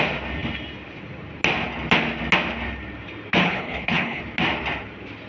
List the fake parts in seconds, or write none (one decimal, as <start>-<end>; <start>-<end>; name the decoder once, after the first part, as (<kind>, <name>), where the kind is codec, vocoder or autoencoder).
3.4-4.2 (codec, HILCodec)